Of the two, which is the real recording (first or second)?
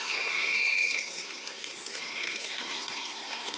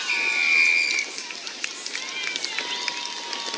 second